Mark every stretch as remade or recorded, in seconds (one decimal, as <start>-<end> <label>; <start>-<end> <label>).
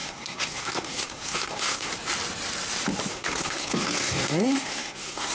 0.0-1.9 remade; 1.9-3.1 recorded; 3.1-5.3 remade